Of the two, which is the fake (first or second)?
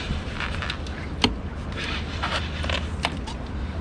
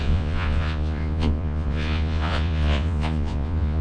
second